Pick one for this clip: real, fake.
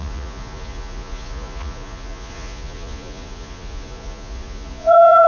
fake